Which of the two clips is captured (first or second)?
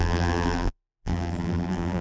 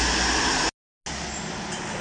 second